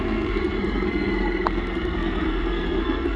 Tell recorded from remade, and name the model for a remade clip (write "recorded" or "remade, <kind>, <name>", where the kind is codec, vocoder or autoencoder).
remade, codec, SNAC